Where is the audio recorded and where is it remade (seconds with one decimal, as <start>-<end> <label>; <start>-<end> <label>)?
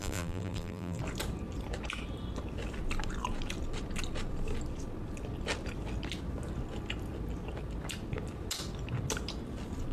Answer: 0.0-1.0 remade; 1.0-9.9 recorded